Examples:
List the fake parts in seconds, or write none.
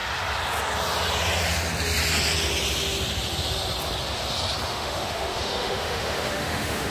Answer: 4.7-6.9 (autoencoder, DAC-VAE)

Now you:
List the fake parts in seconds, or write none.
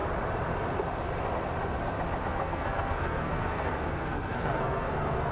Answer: 2.3-5.3 (codec, SNAC)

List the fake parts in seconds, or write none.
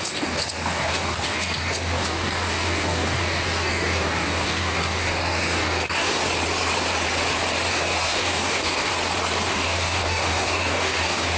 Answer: 0.0-6.2 (codec, DAC); 7.7-8.9; 9.5-11.4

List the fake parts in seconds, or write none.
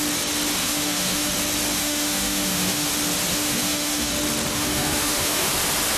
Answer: 0.6-1.3 (autoencoder, DAC-VAE); 1.8-2.9; 3.3-4.1; 4.5-5.5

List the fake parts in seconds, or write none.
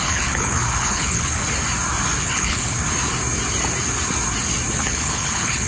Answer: 0.0-1.4 (codec, HILCodec); 2.2-2.8; 4.8-5.7